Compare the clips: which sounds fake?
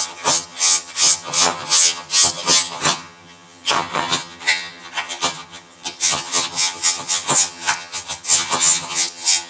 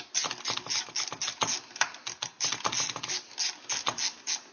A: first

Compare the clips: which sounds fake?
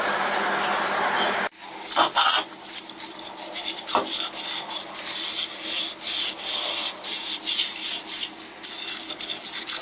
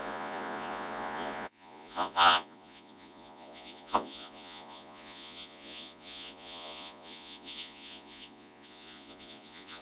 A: second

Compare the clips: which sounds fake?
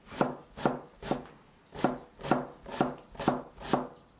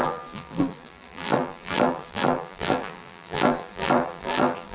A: second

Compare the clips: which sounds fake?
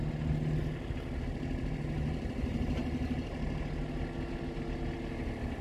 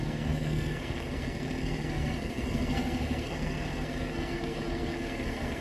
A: second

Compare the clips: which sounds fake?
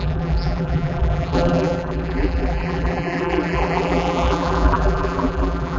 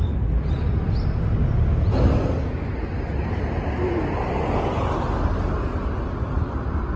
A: first